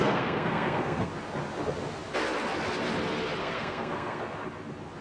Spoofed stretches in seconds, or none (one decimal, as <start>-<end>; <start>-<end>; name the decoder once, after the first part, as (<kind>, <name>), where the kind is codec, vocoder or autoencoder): 0.0-1.1 (codec, SNAC); 3.4-4.2